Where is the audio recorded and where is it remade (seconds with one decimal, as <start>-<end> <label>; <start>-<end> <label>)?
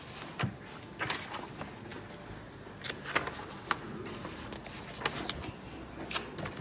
0.0-6.6 recorded